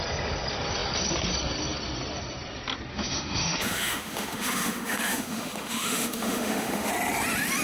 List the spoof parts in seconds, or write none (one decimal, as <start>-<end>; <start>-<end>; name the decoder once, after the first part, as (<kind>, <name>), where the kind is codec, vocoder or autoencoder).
2.9-6.9 (autoencoder, DAC-VAE)